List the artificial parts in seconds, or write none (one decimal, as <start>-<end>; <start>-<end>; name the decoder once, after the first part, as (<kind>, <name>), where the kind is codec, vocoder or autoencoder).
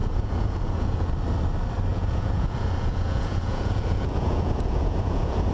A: 0.0-1.1 (vocoder, Vocos); 1.9-5.5